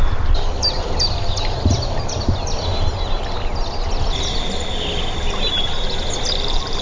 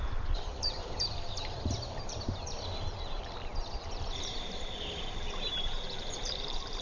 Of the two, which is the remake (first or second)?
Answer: second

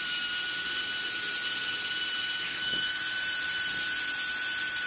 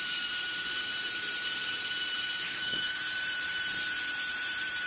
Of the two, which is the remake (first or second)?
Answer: second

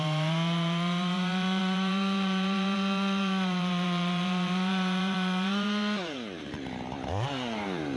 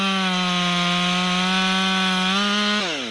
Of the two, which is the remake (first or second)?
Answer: first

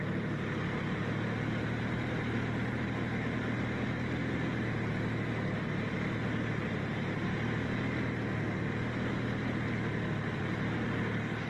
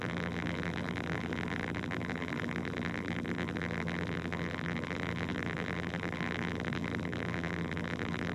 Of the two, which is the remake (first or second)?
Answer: second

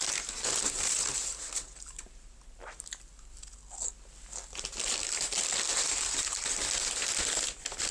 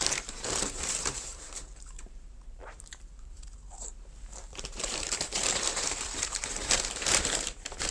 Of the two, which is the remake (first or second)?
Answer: second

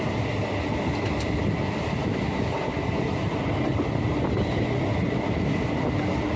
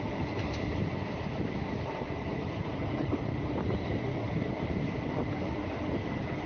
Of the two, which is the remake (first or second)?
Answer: second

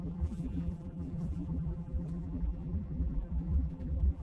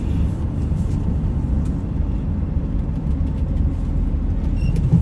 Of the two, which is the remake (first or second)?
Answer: first